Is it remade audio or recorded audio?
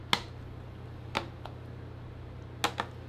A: recorded